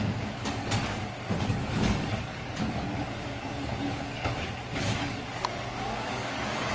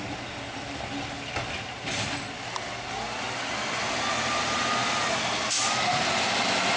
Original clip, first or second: second